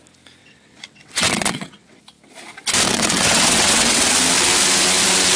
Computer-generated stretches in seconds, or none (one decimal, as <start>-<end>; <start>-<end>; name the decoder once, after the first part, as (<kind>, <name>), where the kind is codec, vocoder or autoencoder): 0.4-2.0 (vocoder, WaveNeXt); 2.9-4.1